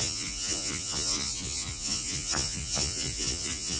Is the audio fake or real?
fake